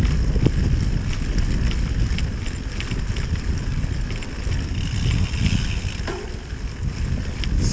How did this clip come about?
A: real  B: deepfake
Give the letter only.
A